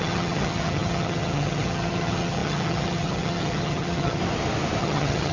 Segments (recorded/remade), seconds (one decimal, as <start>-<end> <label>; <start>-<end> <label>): 0.0-4.2 remade; 4.2-4.8 recorded; 4.8-5.3 remade